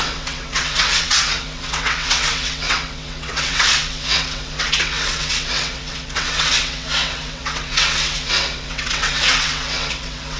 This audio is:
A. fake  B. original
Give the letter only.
A